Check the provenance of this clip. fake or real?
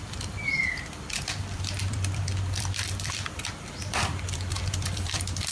fake